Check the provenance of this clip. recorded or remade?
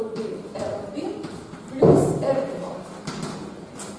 remade